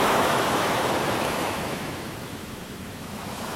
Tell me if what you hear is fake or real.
fake